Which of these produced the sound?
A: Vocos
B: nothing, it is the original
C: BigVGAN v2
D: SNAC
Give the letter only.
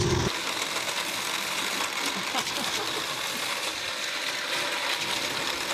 B